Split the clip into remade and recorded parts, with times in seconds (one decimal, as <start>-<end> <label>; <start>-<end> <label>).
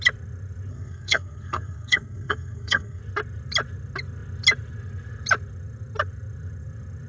0.0-0.7 recorded; 0.7-3.0 remade; 3.0-7.1 recorded